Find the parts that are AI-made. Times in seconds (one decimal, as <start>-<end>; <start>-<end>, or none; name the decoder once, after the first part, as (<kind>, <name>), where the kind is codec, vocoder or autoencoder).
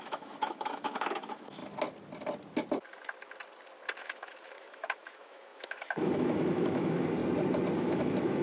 0.0-1.6 (autoencoder, DAC-VAE); 4.0-7.2; 7.8-8.4